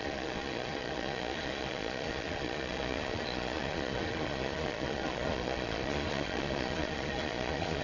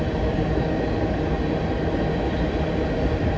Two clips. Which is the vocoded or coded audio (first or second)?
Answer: first